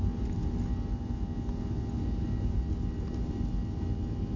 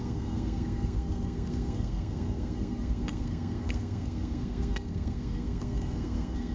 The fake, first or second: second